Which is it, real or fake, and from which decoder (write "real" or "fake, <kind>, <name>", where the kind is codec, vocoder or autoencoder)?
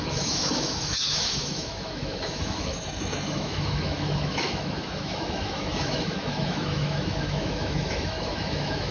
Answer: fake, autoencoder, DAC-VAE